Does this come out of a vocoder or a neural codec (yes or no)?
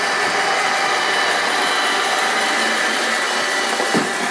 no